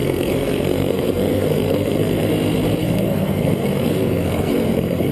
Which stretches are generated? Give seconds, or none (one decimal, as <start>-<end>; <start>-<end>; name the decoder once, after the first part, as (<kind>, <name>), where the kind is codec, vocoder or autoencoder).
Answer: 0.0-2.3 (codec, SNAC); 2.8-5.1